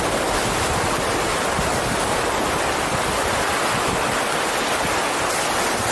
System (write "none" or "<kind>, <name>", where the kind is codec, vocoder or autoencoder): none